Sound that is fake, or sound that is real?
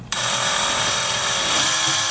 fake